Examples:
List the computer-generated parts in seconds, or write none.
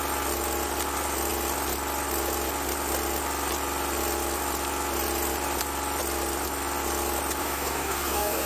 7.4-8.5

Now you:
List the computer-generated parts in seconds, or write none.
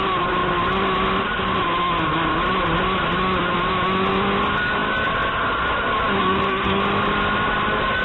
6.2-6.8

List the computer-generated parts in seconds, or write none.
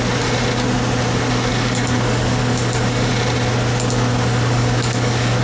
1.5-3.1; 4.1-5.4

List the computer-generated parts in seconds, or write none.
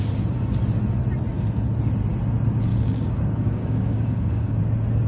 2.7-4.6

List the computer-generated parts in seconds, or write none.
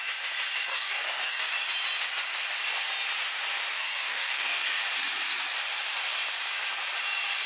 0.7-1.5; 3.7-4.8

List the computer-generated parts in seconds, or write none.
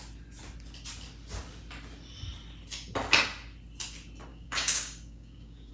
4.3-5.7